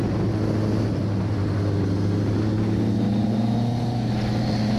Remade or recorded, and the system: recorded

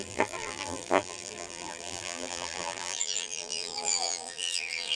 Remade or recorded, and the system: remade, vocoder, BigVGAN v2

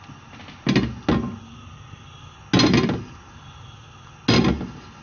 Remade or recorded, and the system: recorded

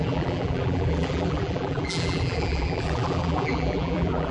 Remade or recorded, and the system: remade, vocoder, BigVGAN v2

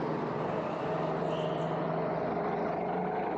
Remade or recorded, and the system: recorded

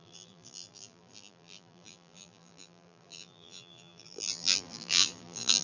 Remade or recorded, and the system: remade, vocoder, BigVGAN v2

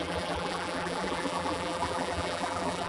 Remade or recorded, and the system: remade, vocoder, BigVGAN v2